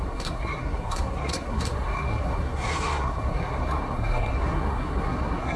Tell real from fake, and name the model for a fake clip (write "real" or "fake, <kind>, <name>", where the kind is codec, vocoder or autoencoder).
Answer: fake, codec, SNAC